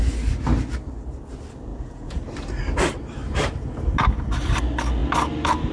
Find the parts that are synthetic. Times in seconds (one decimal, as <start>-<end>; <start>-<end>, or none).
1.7-2.2